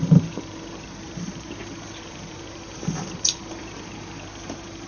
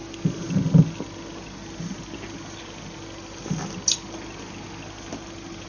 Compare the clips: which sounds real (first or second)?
second